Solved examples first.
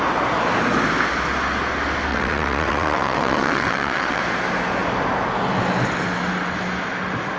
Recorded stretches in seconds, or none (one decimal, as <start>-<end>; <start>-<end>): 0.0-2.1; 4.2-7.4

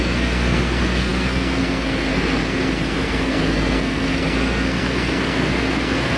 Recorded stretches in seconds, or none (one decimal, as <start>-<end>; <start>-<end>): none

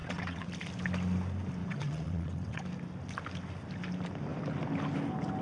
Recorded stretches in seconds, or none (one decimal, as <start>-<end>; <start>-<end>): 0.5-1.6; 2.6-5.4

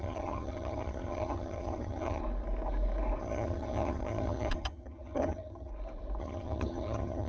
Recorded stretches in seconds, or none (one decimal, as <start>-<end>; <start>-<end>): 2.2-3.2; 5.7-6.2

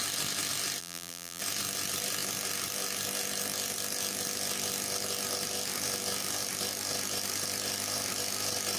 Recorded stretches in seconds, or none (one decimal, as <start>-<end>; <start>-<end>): 0.0-0.8; 1.4-8.8